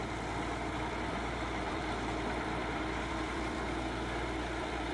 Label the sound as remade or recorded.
remade